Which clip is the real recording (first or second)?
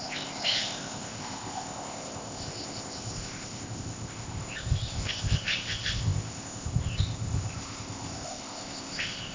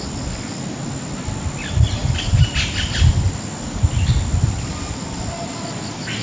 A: second